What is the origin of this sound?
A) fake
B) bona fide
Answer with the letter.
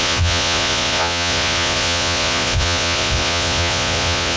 A